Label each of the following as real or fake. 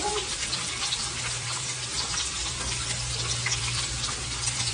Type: fake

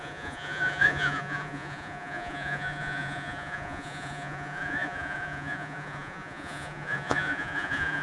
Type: fake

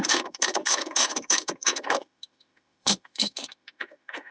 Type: fake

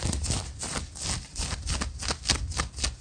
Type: real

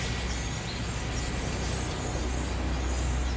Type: real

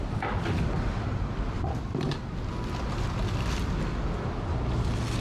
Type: real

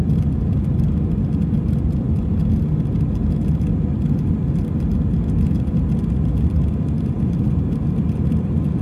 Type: real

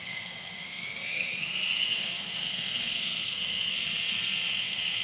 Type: fake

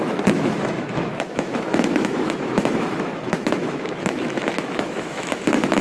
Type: fake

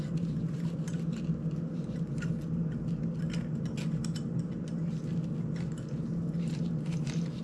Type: real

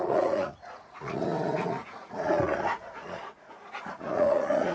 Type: fake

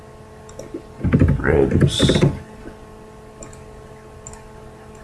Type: real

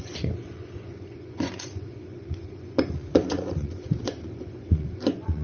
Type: fake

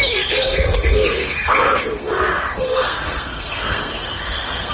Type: fake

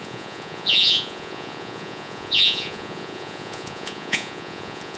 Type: fake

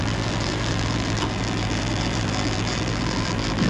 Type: fake